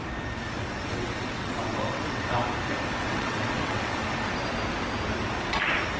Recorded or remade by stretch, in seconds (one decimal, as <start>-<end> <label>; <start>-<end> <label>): 0.0-0.6 recorded; 0.6-2.4 remade; 2.4-3.0 recorded; 3.0-4.0 remade; 4.0-6.0 recorded